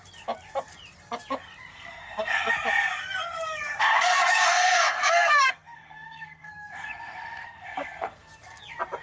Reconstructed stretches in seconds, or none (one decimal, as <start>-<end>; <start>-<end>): 1.7-2.5; 3.8-8.3